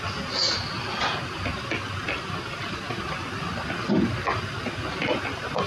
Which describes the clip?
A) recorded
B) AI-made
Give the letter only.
A